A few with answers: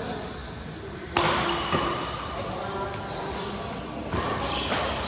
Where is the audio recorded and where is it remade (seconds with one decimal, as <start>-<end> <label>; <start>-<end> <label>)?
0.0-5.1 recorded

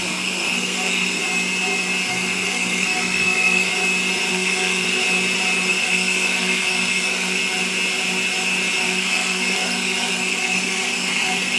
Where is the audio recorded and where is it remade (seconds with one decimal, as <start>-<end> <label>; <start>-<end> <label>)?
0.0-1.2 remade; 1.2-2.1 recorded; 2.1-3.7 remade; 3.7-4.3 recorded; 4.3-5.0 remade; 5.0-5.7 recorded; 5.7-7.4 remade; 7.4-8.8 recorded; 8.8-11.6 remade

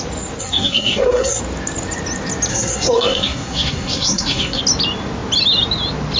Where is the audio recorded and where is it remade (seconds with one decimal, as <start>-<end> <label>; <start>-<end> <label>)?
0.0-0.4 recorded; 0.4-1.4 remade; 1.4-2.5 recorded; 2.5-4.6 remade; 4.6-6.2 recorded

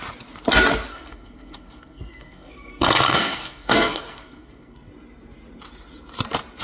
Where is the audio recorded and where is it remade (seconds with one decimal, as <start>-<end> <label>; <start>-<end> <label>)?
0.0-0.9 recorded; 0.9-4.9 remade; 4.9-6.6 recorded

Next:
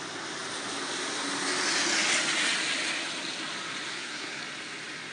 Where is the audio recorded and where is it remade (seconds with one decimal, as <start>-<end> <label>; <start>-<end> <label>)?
0.0-3.9 recorded; 3.9-4.4 remade; 4.4-5.1 recorded

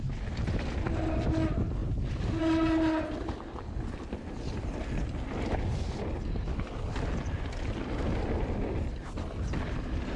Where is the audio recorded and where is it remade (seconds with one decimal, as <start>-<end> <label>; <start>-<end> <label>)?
0.0-10.2 recorded

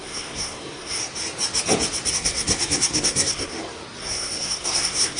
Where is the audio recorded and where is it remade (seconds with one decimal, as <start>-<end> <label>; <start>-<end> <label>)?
0.0-1.0 remade; 1.0-2.1 recorded; 2.1-3.5 remade; 3.5-4.0 recorded; 4.0-5.2 remade

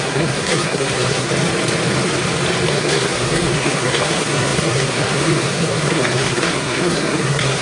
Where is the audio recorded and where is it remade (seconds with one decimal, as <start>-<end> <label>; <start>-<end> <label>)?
0.0-1.3 remade; 1.3-2.7 recorded; 2.7-7.6 remade